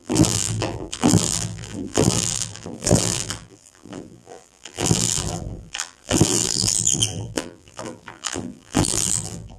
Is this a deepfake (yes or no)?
yes